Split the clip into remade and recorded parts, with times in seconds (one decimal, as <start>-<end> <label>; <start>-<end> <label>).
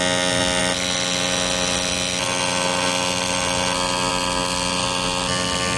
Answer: 0.0-5.8 recorded